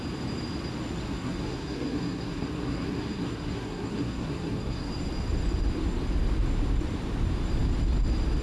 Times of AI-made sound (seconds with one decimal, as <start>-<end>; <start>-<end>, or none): 1.1-4.9